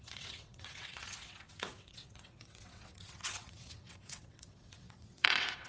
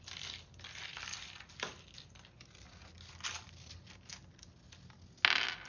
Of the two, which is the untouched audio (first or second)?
second